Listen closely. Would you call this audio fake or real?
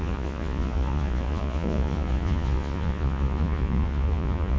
fake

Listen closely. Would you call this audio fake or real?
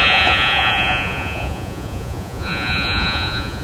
fake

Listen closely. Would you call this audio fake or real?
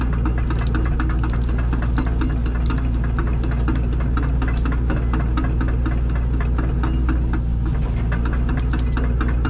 real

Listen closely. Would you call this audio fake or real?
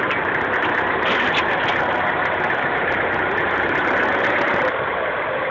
real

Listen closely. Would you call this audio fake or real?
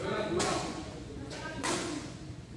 fake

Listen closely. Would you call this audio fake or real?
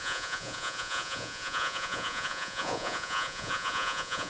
fake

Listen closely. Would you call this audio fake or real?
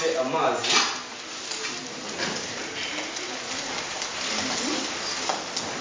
real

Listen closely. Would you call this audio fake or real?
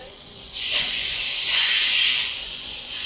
fake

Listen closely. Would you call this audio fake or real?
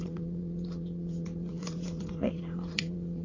fake